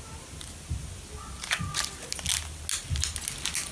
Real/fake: real